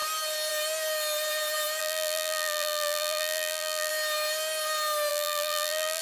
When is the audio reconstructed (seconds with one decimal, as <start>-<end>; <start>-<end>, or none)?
1.8-3.9; 5.1-6.0